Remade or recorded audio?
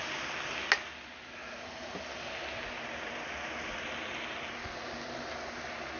recorded